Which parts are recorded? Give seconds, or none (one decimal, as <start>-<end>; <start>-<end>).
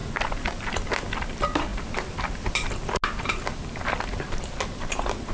0.0-5.3